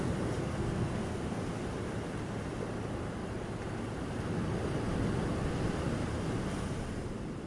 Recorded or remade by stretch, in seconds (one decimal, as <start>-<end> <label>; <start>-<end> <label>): 0.0-0.4 recorded; 0.4-1.4 remade; 1.4-7.5 recorded